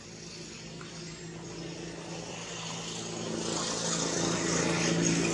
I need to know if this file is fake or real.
real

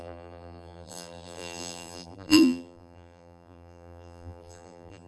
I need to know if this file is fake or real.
fake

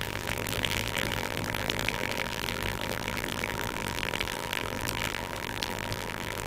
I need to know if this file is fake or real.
fake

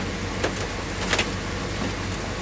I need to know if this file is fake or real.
real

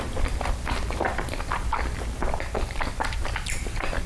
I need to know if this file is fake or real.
fake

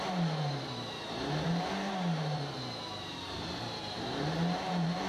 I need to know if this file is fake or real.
fake